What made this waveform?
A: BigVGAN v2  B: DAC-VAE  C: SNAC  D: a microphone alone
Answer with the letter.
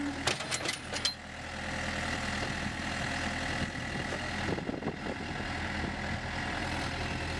D